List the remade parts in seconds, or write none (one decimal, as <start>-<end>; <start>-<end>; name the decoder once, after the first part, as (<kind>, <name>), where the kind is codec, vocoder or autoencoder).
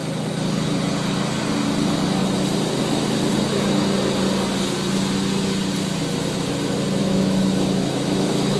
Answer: 7.0-8.6 (autoencoder, DAC-VAE)